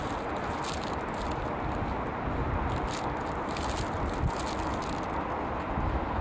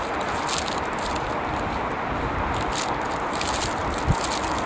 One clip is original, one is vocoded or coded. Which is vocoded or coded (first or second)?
second